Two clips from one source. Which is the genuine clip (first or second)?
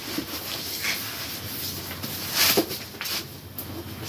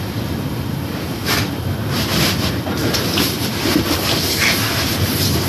first